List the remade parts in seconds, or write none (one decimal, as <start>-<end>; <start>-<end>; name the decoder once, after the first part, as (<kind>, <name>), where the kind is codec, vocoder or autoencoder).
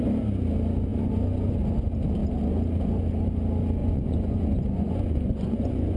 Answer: 0.9-1.6 (vocoder, Vocos); 3.8-6.0